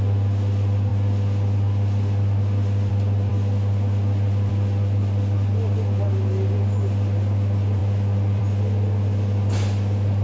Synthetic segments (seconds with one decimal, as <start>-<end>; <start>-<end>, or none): none